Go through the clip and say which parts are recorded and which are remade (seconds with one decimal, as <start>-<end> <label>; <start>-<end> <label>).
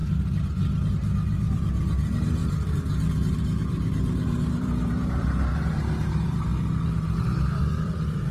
0.0-0.9 recorded; 0.9-6.5 remade; 6.5-7.6 recorded; 7.6-8.3 remade